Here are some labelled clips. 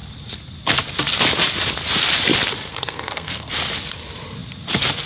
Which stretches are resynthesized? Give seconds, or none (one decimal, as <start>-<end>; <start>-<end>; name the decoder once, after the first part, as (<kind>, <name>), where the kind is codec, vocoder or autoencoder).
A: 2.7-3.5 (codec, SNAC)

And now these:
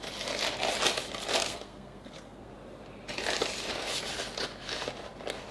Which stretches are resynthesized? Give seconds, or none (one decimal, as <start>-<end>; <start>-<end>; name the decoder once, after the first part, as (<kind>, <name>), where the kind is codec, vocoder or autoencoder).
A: 1.4-2.5 (codec, SNAC)

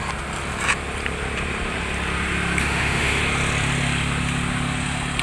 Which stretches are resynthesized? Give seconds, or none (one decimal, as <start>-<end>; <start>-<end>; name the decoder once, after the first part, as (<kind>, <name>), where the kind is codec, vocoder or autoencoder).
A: 2.6-3.2 (autoencoder, DAC-VAE)

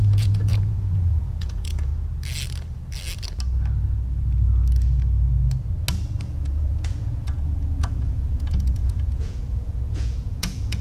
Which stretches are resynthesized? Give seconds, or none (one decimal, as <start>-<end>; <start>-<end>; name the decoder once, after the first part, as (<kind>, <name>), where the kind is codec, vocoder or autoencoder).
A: 0.0-1.9 (vocoder, Vocos); 6.2-10.8